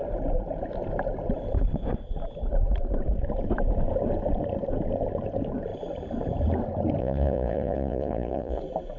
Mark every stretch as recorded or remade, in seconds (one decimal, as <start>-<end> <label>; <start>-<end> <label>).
0.0-7.0 recorded; 7.0-8.6 remade; 8.6-9.0 recorded